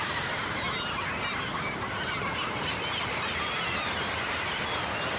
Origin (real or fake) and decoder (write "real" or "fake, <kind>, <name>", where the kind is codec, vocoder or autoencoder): real